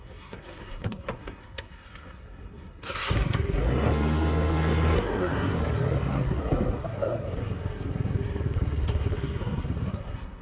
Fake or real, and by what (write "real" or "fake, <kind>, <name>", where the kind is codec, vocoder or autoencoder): fake, codec, SNAC